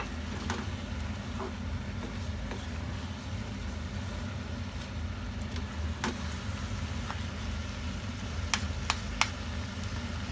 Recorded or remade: recorded